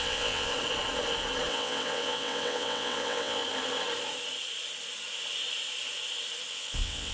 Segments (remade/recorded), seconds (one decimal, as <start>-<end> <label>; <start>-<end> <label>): 0.0-0.5 remade; 0.5-1.5 recorded; 1.5-3.4 remade; 3.4-6.5 recorded; 6.5-7.1 remade